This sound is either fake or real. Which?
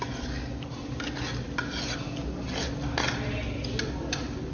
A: real